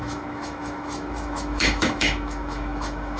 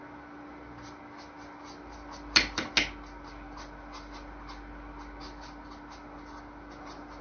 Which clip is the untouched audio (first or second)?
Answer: second